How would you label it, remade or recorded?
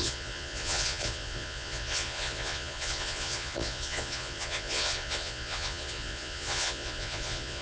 remade